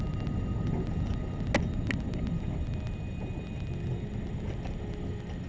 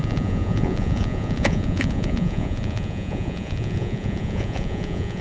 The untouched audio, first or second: first